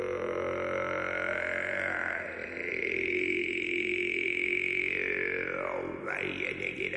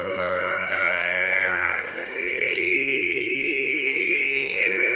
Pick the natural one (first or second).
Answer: first